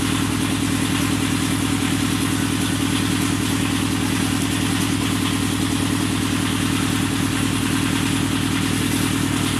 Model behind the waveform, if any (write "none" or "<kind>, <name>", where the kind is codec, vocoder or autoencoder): none